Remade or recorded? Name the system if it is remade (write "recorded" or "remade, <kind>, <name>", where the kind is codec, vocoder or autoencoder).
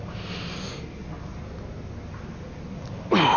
recorded